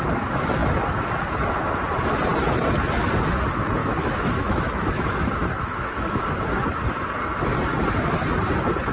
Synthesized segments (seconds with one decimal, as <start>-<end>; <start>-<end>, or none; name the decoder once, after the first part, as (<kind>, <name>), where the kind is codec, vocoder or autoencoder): 3.8-6.2 (autoencoder, DAC-VAE)